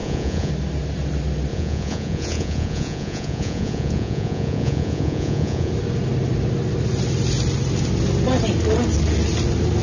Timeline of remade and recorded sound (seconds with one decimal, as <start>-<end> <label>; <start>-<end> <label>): 0.0-0.5 remade; 0.5-1.5 recorded; 1.5-5.7 remade; 5.7-9.8 recorded